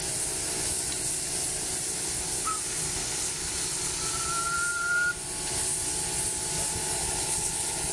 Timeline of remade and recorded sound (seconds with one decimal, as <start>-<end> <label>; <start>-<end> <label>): 0.0-7.0 recorded; 7.0-7.9 remade